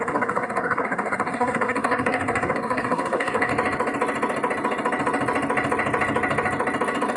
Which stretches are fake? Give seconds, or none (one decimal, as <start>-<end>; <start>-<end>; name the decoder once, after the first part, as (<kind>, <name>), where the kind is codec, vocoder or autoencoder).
0.0-3.5 (codec, SNAC)